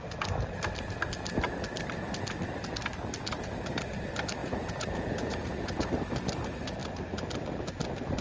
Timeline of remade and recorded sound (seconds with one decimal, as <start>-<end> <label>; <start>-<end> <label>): 0.0-4.4 recorded; 4.4-5.9 remade; 5.9-8.2 recorded